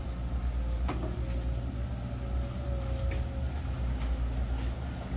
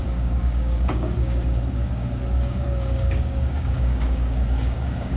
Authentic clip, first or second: first